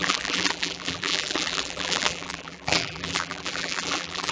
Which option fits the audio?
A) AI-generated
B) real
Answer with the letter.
A